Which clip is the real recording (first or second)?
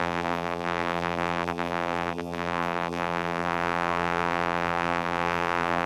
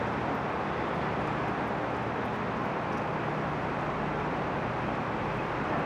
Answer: second